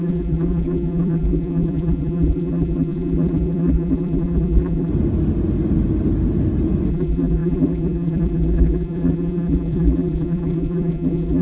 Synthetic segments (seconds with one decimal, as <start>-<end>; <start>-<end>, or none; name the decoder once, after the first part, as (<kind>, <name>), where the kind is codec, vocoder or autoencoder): 0.0-4.9 (vocoder, BigVGAN v2); 6.9-11.4